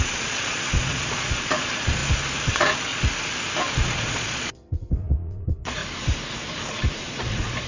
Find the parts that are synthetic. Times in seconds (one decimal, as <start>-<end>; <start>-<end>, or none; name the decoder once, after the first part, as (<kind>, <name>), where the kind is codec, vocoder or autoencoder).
0.0-2.0 (vocoder, Vocos); 2.5-2.9; 3.6-5.8; 6.9-7.7